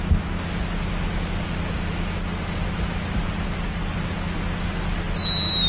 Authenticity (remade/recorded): recorded